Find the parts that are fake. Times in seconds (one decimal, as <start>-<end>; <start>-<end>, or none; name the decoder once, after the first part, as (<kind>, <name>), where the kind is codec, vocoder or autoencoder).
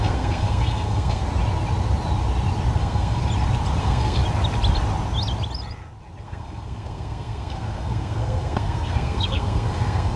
0.0-1.2 (codec, SNAC); 2.8-3.2; 3.8-4.2; 6.2-10.2